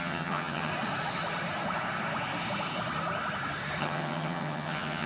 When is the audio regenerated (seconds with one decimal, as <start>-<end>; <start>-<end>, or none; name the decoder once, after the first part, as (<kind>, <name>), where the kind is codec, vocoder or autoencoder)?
0.0-0.7 (vocoder, HiFi-GAN); 3.8-5.1